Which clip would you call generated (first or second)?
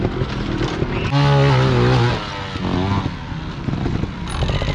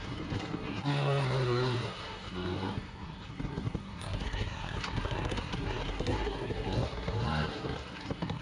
second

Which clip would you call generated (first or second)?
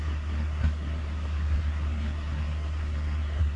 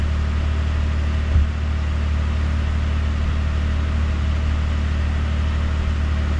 first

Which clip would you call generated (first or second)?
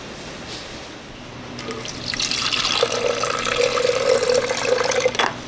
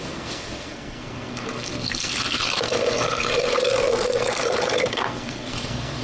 second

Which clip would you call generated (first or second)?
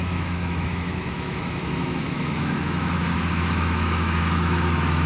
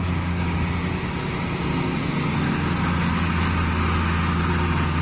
first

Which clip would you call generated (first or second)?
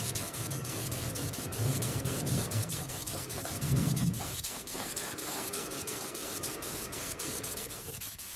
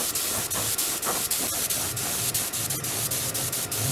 first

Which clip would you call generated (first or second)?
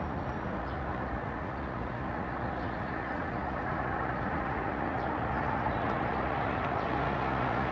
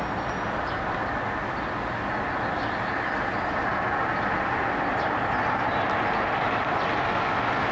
first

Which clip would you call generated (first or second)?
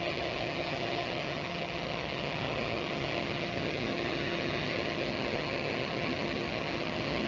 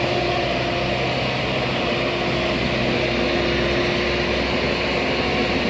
first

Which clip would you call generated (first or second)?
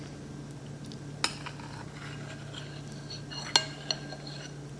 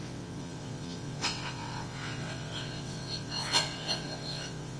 second